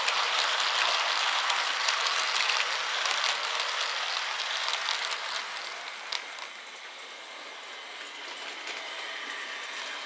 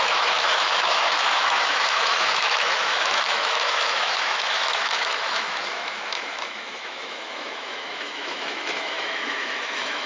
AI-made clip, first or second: second